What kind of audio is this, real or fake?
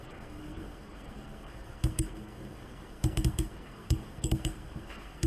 fake